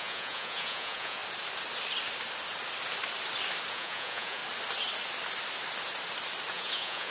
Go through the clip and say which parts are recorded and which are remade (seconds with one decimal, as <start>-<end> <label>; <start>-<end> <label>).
0.0-1.2 remade; 1.2-3.7 recorded; 3.7-4.4 remade; 4.4-6.5 recorded; 6.5-7.1 remade